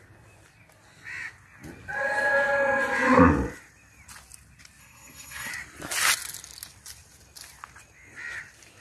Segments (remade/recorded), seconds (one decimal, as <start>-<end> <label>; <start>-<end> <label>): 0.0-4.8 recorded; 4.8-5.5 remade; 5.5-8.8 recorded